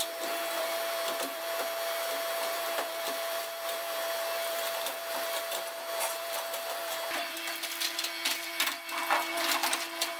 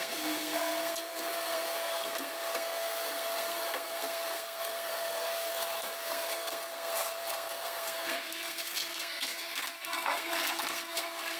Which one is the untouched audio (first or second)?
first